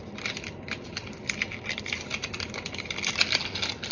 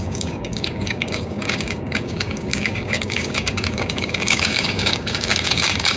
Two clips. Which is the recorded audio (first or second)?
first